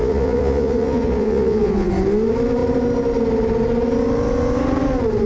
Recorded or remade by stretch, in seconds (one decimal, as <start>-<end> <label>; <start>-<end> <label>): 0.0-1.9 remade; 1.9-5.3 recorded